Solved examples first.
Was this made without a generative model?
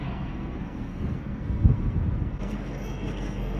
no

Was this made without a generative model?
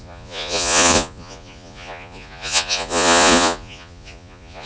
no